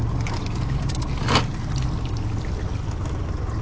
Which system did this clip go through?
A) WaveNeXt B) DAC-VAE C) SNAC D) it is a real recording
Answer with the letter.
D